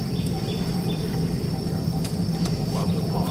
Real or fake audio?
fake